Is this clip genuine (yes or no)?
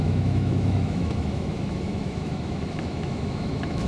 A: no